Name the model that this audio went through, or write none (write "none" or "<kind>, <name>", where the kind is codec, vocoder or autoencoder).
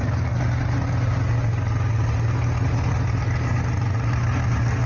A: none